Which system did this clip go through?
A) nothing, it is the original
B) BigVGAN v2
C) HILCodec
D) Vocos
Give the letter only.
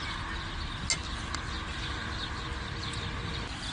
A